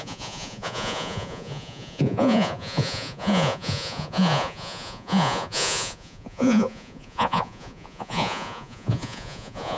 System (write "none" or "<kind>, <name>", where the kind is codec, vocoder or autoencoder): vocoder, Vocos